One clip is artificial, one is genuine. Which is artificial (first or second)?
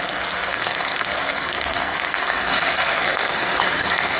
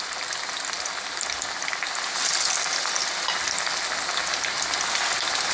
first